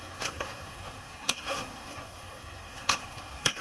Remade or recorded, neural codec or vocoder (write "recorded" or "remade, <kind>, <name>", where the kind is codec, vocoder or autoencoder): remade, codec, SNAC